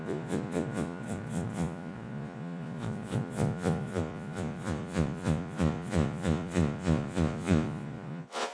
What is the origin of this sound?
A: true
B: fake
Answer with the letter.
B